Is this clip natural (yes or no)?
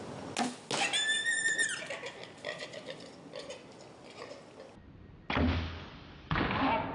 yes